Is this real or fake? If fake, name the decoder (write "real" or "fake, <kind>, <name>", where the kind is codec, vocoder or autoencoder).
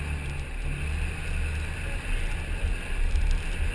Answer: real